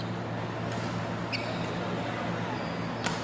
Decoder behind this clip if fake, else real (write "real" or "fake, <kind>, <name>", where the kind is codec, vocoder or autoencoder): real